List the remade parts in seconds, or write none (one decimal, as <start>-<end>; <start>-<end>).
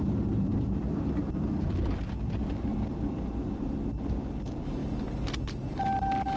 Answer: none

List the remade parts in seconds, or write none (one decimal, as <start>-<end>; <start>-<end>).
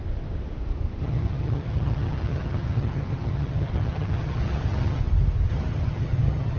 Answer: 1.0-5.0; 5.5-6.6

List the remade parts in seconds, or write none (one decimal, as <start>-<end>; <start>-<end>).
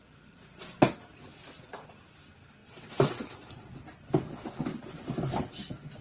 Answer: 2.6-3.7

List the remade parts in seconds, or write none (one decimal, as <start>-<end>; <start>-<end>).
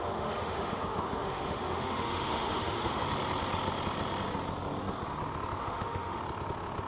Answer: 0.0-3.1; 5.6-6.2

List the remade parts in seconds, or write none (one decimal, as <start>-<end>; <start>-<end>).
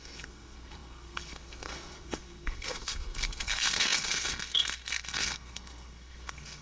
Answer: 0.0-6.6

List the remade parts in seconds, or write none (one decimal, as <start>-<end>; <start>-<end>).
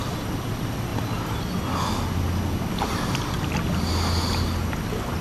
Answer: 0.9-1.4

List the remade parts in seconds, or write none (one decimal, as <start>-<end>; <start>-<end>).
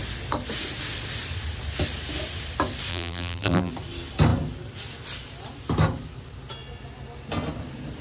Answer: 2.9-3.7